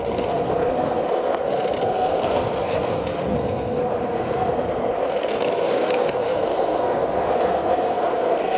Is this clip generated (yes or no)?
yes